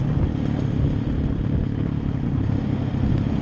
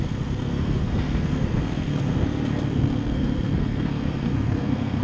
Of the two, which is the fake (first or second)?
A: second